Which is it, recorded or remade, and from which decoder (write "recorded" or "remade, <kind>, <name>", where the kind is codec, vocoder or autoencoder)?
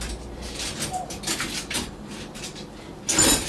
recorded